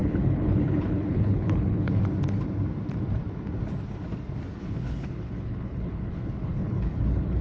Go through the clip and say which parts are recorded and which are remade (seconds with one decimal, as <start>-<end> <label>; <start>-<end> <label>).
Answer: 0.0-2.0 remade; 2.0-4.6 recorded; 4.6-7.4 remade

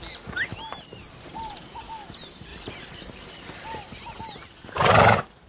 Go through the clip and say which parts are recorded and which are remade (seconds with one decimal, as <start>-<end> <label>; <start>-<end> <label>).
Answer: 0.0-0.5 recorded; 0.5-1.6 remade; 1.6-2.5 recorded; 2.5-4.9 remade; 4.9-5.5 recorded

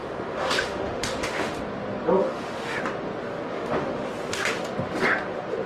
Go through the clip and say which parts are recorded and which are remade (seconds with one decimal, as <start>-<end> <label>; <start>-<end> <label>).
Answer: 0.0-1.6 remade; 1.6-2.2 recorded; 2.2-2.8 remade; 2.8-3.5 recorded; 3.5-4.1 remade; 4.1-5.7 recorded

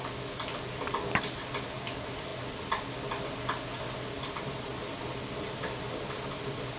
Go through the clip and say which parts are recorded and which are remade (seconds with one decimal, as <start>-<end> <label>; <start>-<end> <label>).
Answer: 0.0-6.8 recorded

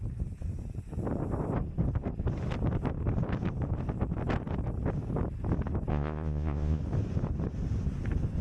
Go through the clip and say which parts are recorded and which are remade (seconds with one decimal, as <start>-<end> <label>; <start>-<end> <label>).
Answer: 0.0-5.9 recorded; 5.9-6.8 remade; 6.8-8.4 recorded

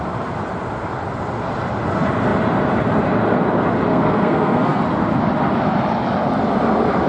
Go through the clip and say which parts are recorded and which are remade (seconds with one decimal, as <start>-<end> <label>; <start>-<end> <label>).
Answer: 0.0-3.9 recorded; 3.9-4.8 remade; 4.8-7.1 recorded